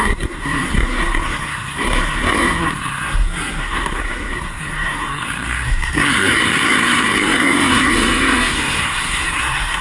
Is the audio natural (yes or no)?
no